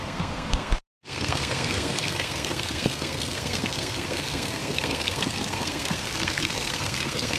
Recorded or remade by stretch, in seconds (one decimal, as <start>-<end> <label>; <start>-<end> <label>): 0.0-7.4 remade